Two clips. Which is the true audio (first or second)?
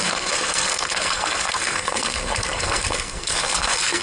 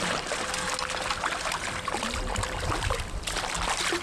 second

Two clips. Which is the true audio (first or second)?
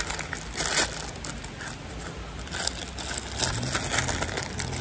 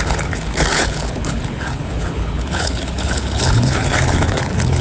first